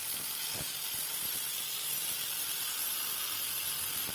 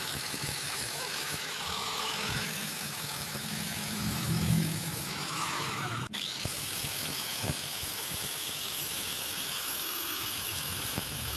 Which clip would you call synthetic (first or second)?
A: second